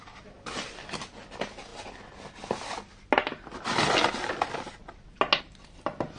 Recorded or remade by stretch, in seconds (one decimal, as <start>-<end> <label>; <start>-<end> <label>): 0.0-6.2 recorded